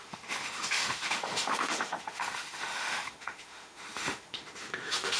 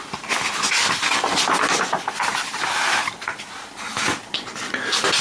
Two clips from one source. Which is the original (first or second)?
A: second